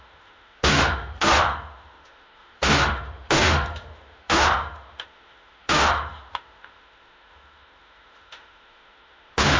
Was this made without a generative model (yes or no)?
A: no